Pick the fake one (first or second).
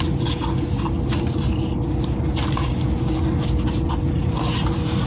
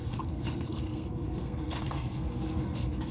second